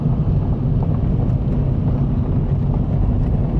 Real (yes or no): yes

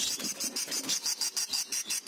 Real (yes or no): yes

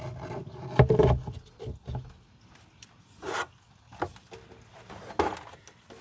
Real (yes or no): yes